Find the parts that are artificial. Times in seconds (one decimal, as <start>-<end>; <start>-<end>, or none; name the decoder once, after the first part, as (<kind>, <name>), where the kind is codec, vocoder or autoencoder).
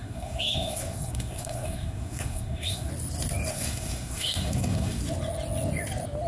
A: 0.0-2.9 (codec, SNAC); 3.5-5.0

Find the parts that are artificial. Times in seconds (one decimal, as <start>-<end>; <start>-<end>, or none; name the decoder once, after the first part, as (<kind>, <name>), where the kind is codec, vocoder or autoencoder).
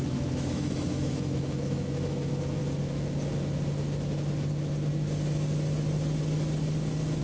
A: 0.0-2.6 (autoencoder, DAC-VAE)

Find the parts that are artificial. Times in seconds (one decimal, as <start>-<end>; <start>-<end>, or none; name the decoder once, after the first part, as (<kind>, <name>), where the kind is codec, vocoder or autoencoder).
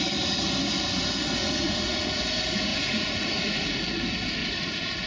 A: 1.4-2.2 (vocoder, Vocos); 2.7-3.8; 4.4-5.1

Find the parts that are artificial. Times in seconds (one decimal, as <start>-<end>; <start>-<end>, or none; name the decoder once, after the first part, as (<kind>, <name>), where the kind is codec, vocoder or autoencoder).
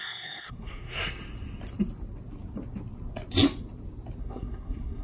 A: 0.0-1.2 (codec, SNAC); 4.2-5.0